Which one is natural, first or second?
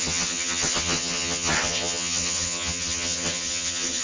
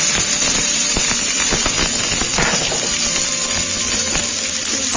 second